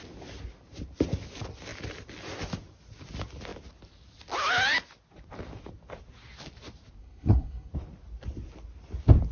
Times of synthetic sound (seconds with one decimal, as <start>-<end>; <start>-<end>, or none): 7.0-7.7